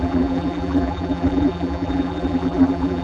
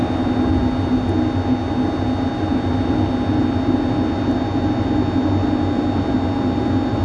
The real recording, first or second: second